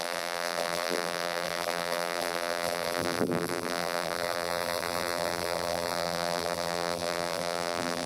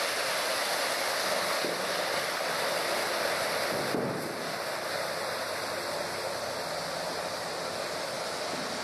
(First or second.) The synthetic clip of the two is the first